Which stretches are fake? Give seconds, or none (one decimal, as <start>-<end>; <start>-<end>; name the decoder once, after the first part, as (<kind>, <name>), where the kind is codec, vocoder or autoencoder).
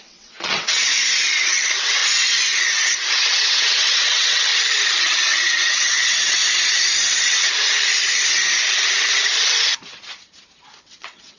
0.0-0.9 (vocoder, WaveNeXt); 1.4-2.0; 3.1-4.5; 5.0-6.4; 10.8-11.4